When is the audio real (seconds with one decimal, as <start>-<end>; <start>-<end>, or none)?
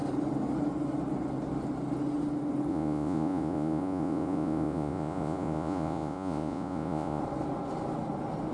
0.0-2.7; 7.2-8.5